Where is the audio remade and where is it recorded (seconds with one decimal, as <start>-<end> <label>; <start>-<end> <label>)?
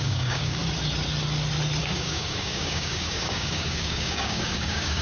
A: 0.0-0.6 remade; 0.6-1.8 recorded; 1.8-5.0 remade